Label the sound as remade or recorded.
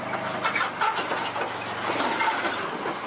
recorded